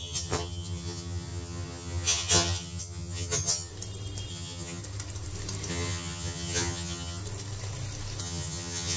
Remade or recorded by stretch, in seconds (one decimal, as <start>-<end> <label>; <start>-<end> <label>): 0.0-3.7 remade; 3.7-4.3 recorded; 4.3-4.8 remade; 4.8-5.7 recorded; 5.7-7.2 remade; 7.2-8.2 recorded; 8.2-9.0 remade